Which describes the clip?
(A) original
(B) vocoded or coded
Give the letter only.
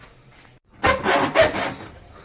A